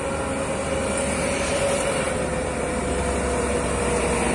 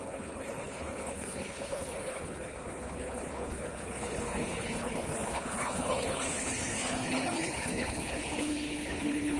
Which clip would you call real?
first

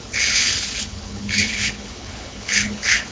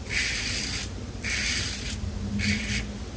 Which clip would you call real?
second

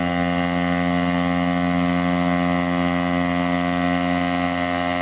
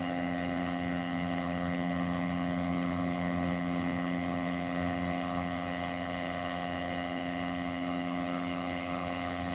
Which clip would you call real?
first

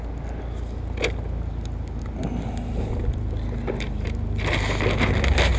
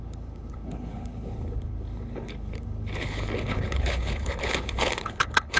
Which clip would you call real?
first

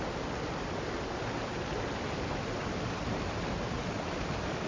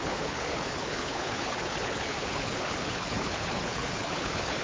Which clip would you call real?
first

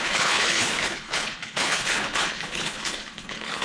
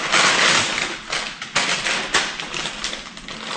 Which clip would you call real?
second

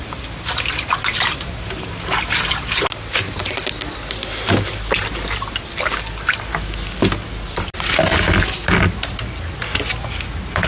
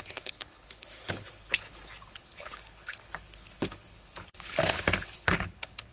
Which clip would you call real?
first